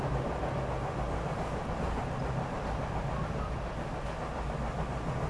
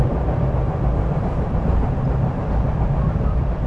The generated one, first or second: second